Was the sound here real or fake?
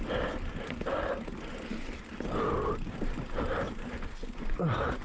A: real